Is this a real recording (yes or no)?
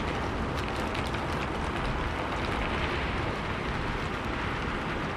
yes